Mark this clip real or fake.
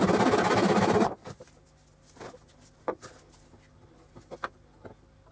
real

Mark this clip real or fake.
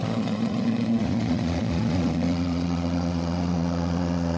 fake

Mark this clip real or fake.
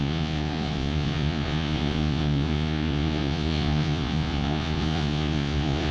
fake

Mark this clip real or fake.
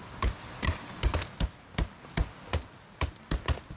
real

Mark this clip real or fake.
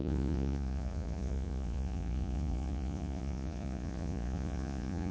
fake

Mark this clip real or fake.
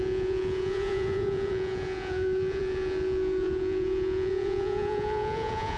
fake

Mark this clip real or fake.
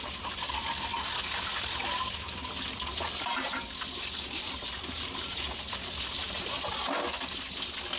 real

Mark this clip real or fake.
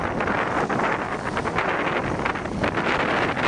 real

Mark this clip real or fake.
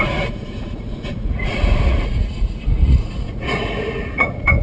fake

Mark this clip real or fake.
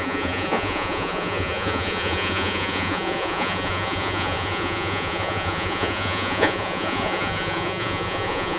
fake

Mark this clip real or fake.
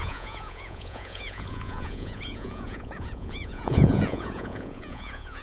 fake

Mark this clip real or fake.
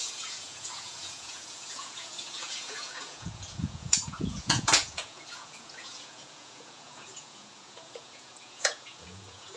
fake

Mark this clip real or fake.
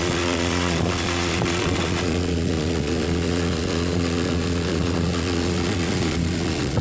fake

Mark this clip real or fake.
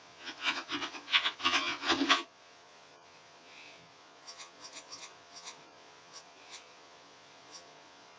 fake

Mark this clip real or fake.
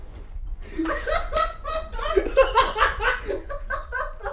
fake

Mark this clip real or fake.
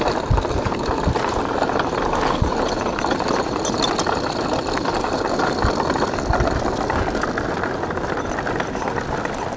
real